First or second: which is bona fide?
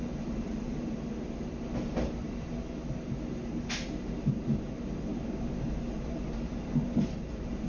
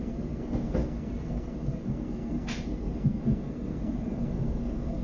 first